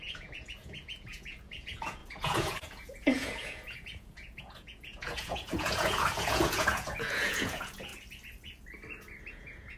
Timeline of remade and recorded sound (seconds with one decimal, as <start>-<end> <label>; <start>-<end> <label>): 0.0-7.9 remade; 7.9-9.3 recorded; 9.3-9.8 remade